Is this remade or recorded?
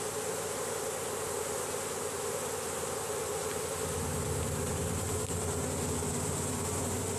recorded